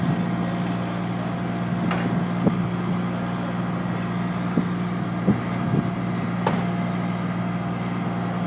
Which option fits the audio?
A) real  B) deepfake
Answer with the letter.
A